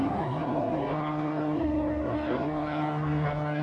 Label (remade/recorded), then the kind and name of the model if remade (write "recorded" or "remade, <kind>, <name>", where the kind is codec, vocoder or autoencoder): remade, codec, SNAC